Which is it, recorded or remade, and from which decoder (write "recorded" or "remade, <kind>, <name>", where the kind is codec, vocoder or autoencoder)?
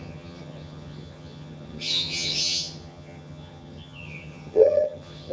remade, vocoder, HiFi-GAN